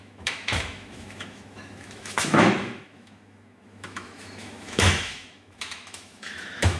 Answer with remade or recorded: remade